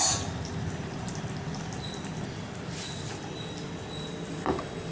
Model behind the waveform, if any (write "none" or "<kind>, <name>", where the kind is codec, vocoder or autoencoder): none